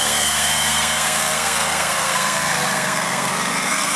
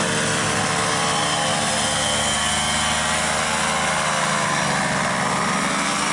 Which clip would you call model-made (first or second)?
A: first